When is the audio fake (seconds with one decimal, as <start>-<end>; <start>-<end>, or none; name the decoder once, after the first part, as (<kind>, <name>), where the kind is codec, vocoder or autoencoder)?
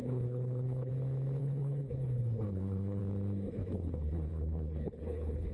0.0-0.9 (codec, HILCodec); 1.4-3.0; 3.5-5.5